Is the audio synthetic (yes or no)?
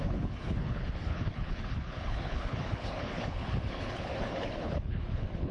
yes